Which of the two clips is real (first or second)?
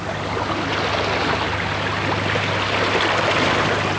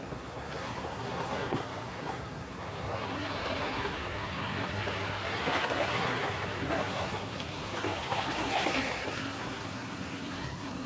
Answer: first